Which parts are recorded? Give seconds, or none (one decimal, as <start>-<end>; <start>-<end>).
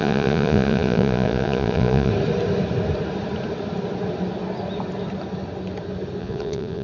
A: 2.1-6.2